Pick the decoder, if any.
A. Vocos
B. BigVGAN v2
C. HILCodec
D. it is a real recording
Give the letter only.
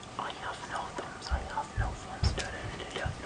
D